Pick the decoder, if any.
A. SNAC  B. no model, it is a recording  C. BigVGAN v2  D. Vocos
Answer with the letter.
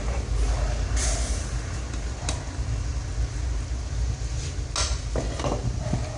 B